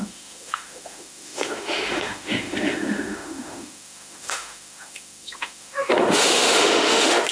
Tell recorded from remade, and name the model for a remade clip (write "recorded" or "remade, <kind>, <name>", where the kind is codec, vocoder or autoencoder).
remade, autoencoder, DAC-VAE